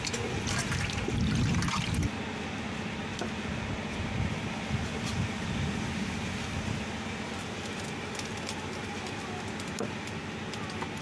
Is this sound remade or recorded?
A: recorded